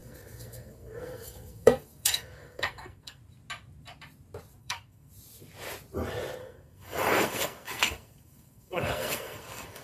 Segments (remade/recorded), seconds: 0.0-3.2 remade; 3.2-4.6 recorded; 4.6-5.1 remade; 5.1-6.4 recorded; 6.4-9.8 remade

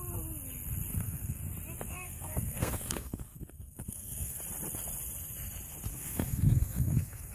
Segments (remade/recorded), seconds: 0.0-0.9 recorded; 0.9-1.4 remade; 1.4-1.9 recorded; 1.9-4.4 remade; 4.4-5.9 recorded; 5.9-7.3 remade

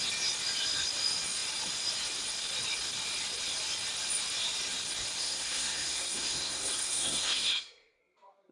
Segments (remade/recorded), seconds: 0.0-5.2 recorded; 5.2-8.0 remade; 8.0-8.5 recorded

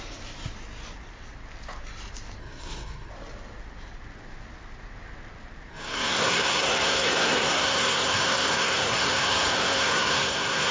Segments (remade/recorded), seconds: 0.0-2.4 recorded; 2.4-3.1 remade; 3.1-5.7 recorded; 5.7-10.7 remade

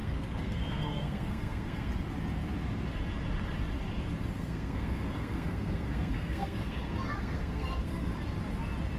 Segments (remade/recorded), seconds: 0.0-1.9 remade; 1.9-4.4 recorded; 4.4-8.1 remade; 8.1-9.0 recorded

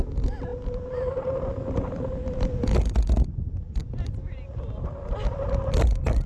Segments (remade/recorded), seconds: 0.0-6.3 recorded

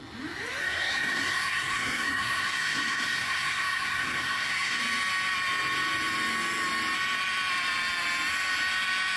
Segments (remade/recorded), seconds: 0.0-0.6 recorded; 0.6-4.8 remade; 4.8-9.2 recorded

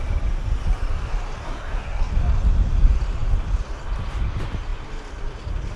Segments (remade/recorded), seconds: 0.0-1.4 recorded; 1.4-2.1 remade; 2.1-5.8 recorded